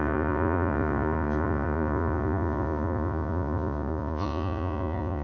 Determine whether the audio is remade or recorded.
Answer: remade